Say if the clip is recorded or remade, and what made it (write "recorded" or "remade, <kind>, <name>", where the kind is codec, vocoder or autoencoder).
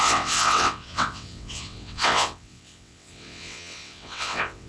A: remade, vocoder, WaveNeXt